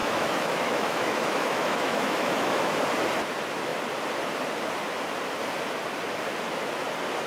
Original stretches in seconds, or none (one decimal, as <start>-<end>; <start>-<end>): 2.8-7.3